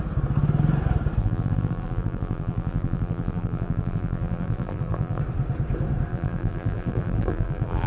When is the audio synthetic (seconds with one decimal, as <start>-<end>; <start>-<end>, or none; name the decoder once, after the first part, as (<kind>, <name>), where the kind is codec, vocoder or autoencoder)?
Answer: 1.2-5.2 (vocoder, BigVGAN v2); 6.1-7.9

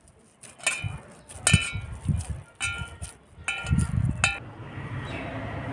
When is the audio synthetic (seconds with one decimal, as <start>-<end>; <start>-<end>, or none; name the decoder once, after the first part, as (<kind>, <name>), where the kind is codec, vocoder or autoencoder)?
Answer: none